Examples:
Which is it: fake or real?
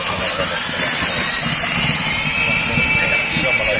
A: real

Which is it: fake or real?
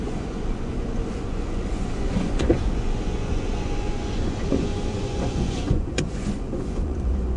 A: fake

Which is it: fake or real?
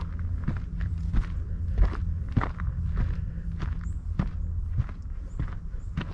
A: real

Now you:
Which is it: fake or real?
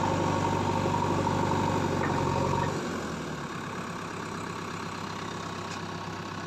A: real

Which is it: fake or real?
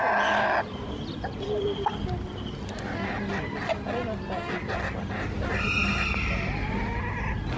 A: real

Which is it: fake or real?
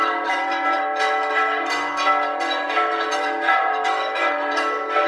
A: fake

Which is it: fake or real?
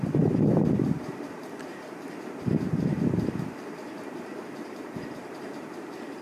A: fake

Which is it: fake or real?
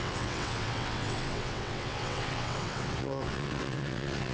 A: fake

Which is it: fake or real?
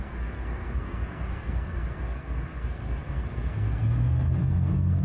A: fake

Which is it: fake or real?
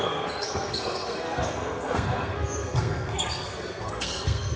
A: fake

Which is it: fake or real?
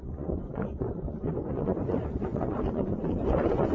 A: fake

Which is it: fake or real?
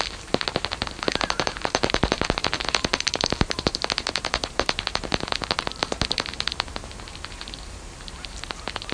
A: fake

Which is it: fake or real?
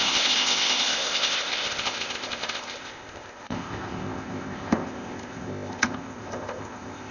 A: fake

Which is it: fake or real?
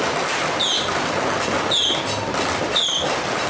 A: real